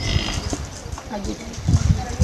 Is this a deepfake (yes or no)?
no